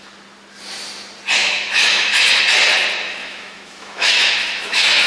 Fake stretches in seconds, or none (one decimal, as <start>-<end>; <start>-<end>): 1.4-2.4; 3.2-5.1